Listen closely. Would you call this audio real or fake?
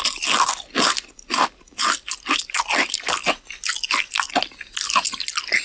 real